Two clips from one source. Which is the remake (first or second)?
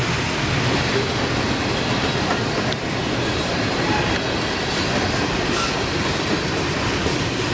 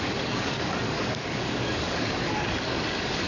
second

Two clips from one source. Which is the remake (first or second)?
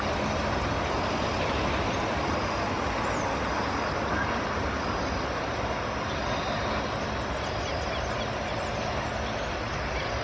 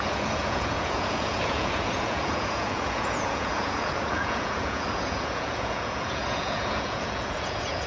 second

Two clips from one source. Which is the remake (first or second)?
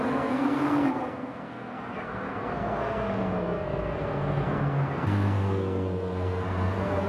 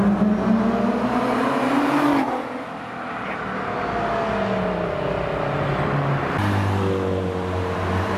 first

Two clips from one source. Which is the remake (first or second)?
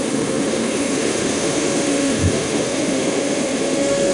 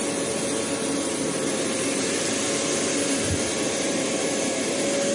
first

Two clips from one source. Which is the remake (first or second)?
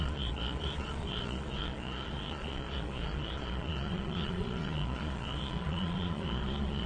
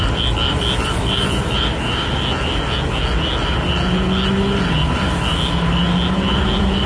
first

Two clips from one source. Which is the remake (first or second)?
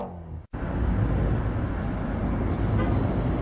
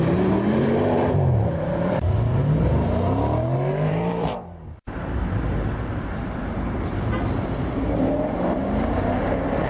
second